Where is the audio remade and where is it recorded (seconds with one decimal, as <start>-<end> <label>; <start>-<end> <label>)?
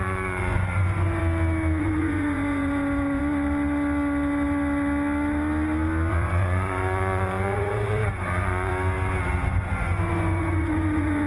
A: 0.0-1.2 remade; 1.2-1.8 recorded; 1.8-3.2 remade; 3.2-6.1 recorded; 6.1-8.7 remade; 8.7-9.6 recorded; 9.6-11.3 remade